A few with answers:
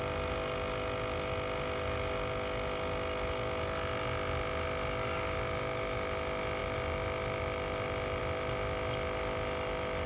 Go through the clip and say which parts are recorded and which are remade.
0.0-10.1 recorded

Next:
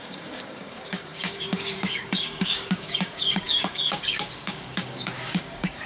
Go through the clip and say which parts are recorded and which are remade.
0.0-5.9 remade